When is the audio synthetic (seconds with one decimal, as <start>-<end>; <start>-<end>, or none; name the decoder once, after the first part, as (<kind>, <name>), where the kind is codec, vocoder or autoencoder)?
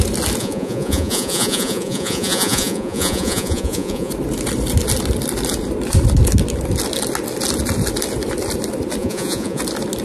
0.4-4.1 (vocoder, Vocos); 9.0-9.6